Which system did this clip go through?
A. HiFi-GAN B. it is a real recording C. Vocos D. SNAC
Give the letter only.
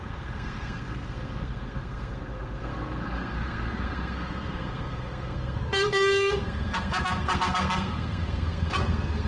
D